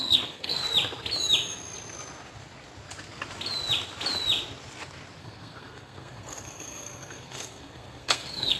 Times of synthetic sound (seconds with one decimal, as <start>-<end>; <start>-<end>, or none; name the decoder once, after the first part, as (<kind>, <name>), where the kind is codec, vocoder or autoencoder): 0.0-0.6 (codec, SNAC); 5.2-8.6